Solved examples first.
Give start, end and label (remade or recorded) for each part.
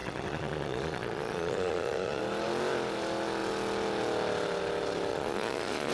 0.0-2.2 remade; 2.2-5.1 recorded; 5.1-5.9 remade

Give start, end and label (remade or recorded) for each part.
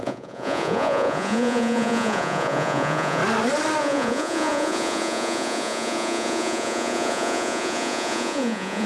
0.0-3.2 remade; 3.2-3.8 recorded; 3.8-8.9 remade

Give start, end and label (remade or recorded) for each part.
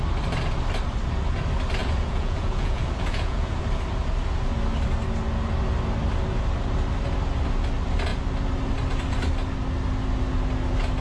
0.0-1.8 recorded; 1.8-3.6 remade; 3.6-11.0 recorded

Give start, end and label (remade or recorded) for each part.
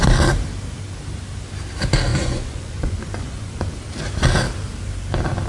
0.0-2.1 recorded; 2.1-3.6 remade; 3.6-5.5 recorded